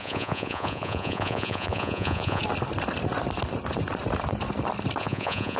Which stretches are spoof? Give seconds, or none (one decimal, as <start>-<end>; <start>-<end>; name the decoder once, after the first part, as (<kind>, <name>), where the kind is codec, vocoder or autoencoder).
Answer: 0.0-2.4 (vocoder, Vocos); 5.0-5.6